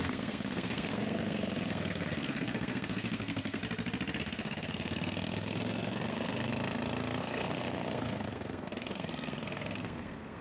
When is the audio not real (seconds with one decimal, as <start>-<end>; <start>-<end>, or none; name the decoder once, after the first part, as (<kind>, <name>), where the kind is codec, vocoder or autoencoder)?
0.0-3.6 (codec, SNAC); 4.2-6.5; 7.2-10.4

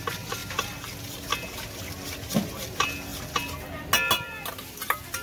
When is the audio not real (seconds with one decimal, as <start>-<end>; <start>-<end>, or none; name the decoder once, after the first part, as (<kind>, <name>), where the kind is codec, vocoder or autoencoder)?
none

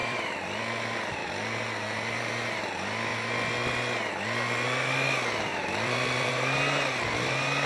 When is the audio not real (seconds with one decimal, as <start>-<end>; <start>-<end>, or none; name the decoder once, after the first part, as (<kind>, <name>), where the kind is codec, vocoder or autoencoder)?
0.0-0.6 (vocoder, BigVGAN v2); 1.2-2.2; 5.5-6.3

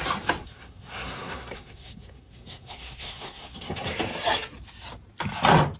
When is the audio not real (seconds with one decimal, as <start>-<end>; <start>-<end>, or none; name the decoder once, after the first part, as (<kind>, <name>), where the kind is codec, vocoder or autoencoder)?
0.4-3.9 (codec, SNAC)

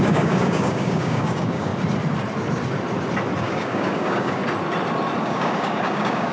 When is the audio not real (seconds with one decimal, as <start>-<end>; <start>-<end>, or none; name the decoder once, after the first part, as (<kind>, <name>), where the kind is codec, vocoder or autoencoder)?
0.0-1.7 (codec, DAC); 3.4-4.4; 5.2-6.3

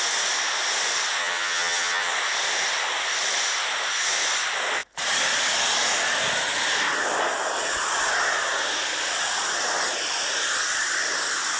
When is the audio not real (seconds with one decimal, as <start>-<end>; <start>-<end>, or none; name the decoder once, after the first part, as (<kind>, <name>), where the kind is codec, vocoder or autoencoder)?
1.2-2.1 (vocoder, HiFi-GAN)

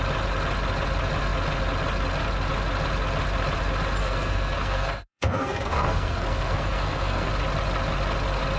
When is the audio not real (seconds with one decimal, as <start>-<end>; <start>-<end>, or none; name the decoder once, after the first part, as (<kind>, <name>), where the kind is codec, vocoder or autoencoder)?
4.0-7.3 (codec, SNAC)

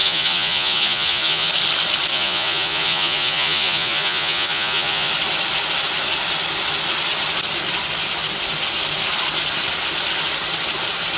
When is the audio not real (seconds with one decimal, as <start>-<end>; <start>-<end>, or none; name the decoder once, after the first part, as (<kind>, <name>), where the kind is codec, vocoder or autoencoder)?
0.0-1.5 (vocoder, Vocos); 2.1-5.1